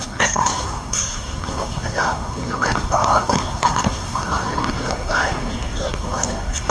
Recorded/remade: remade